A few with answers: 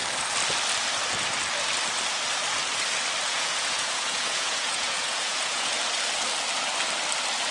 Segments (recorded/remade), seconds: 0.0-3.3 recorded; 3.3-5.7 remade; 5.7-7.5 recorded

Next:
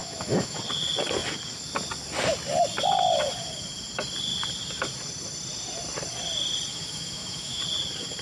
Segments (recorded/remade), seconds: 0.0-0.6 remade; 0.6-6.7 recorded; 6.7-7.6 remade; 7.6-8.2 recorded

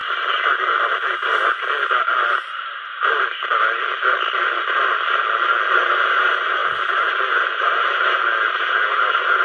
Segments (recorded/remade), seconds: 0.0-6.6 recorded; 6.6-8.2 remade; 8.2-9.4 recorded

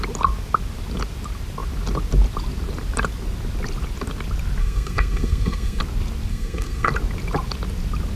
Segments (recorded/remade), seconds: 0.0-4.6 recorded; 4.6-5.8 remade; 5.8-6.3 recorded; 6.3-6.9 remade; 6.9-8.2 recorded

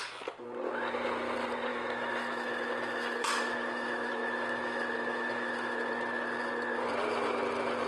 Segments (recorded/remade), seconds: 0.0-1.7 recorded; 1.7-5.9 remade; 5.9-7.9 recorded

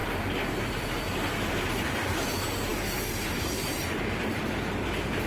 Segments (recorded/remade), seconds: 0.0-0.7 recorded; 0.7-5.3 remade

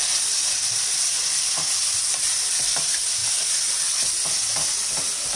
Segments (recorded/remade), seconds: 0.0-5.4 recorded

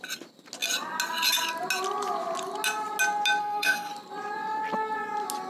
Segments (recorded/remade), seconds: 0.0-3.4 recorded; 3.4-3.9 remade; 3.9-5.5 recorded